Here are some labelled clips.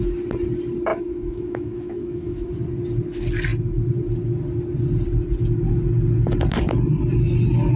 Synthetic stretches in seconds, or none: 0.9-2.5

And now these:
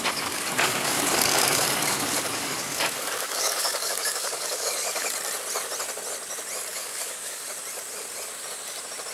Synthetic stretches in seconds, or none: 0.0-5.1; 6.7-7.4

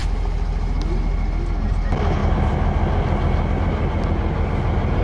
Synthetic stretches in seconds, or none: none

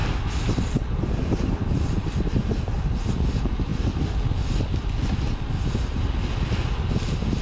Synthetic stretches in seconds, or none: none

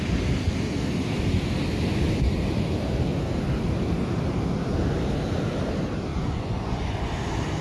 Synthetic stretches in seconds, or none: 6.1-7.1

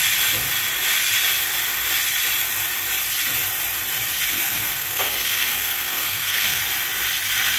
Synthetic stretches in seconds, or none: 4.3-6.6

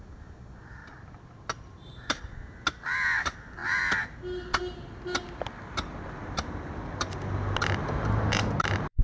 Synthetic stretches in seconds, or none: 0.8-2.3; 7.8-9.0